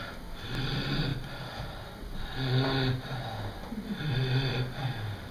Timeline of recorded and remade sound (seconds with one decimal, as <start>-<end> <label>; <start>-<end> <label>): 0.0-5.3 recorded

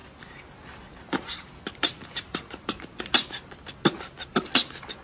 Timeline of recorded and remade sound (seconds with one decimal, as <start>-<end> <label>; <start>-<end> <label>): 0.0-3.0 remade; 3.0-5.0 recorded

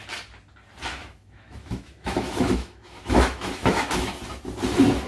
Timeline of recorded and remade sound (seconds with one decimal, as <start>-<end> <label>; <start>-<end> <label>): 0.0-1.0 recorded; 1.0-4.1 remade; 4.1-5.1 recorded

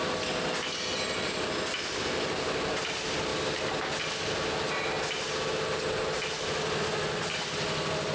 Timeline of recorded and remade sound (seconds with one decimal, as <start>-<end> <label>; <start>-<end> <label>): 0.0-8.1 recorded